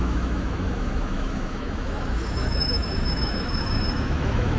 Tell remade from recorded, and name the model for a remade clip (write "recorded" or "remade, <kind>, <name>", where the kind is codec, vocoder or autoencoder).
remade, autoencoder, DAC-VAE